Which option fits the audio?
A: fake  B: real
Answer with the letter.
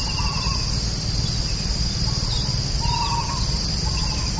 B